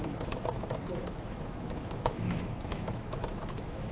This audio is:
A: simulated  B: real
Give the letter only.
A